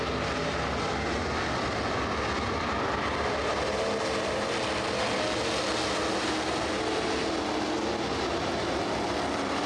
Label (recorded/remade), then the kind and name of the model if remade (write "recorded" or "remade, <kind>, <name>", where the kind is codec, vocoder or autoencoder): recorded